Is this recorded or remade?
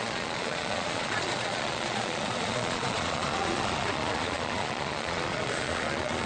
remade